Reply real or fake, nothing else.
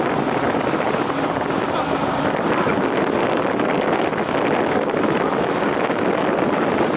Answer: real